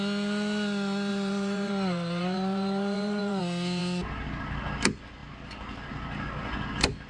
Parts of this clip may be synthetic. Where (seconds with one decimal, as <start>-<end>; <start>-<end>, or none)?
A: 1.1-3.4